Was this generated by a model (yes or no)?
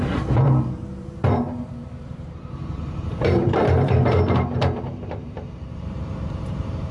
yes